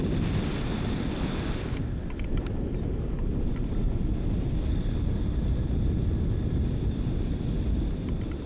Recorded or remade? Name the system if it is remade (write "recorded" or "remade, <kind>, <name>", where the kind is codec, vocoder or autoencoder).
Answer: recorded